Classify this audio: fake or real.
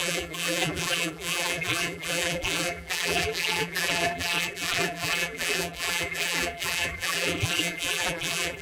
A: fake